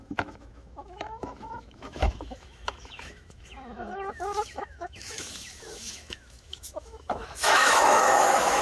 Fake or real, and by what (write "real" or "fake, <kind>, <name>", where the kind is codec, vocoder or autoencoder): fake, autoencoder, DAC-VAE